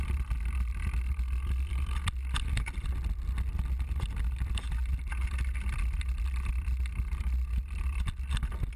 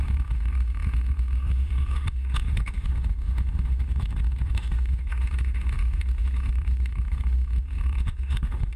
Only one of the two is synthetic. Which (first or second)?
second